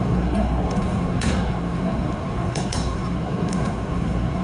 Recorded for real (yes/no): no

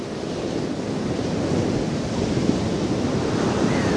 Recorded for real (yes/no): yes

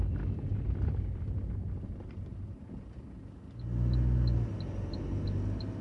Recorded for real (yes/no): yes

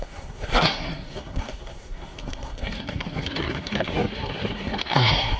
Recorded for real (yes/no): no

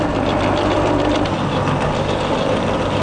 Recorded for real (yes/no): yes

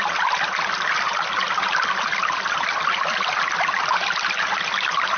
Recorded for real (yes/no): yes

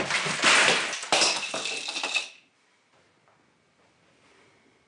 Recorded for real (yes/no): yes